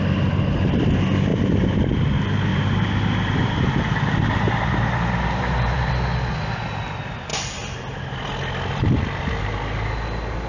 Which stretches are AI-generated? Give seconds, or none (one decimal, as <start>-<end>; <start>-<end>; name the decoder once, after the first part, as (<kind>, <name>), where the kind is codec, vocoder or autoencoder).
1.3-2.0 (vocoder, BigVGAN v2); 2.5-5.9